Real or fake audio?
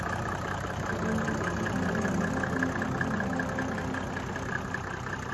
real